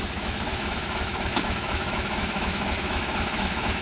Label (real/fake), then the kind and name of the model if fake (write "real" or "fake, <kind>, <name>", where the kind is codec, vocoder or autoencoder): fake, autoencoder, DAC-VAE